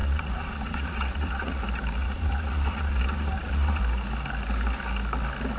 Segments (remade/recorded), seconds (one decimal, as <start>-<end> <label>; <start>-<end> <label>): 0.0-1.6 remade; 1.6-2.0 recorded; 2.0-3.8 remade; 3.8-5.6 recorded